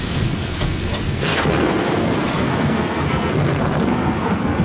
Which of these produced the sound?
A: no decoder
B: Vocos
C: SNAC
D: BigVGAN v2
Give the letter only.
C